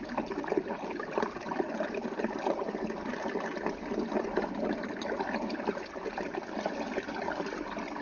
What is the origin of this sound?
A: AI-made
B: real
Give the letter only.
B